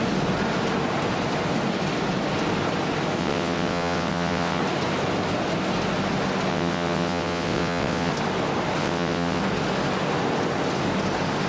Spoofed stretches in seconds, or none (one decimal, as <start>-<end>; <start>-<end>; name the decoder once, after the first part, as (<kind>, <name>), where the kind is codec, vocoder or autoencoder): 3.2-4.6 (vocoder, WaveNeXt); 6.5-8.1; 8.8-9.4